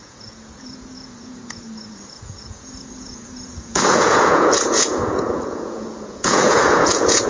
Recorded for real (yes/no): no